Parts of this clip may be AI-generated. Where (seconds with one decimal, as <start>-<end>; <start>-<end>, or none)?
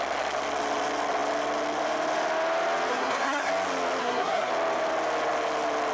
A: 2.9-3.5; 4.0-4.5